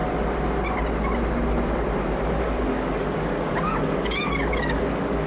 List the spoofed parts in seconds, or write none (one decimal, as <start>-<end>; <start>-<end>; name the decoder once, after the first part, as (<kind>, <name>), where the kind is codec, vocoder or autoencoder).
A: 2.4-5.3 (codec, DAC)